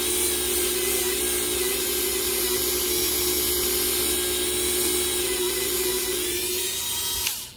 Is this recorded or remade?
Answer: recorded